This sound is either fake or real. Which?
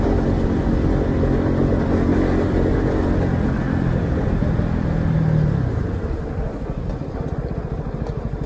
real